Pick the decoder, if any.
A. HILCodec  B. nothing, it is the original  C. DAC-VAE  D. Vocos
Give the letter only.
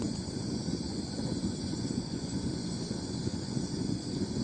D